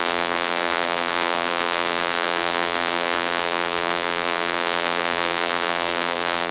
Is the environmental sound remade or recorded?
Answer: remade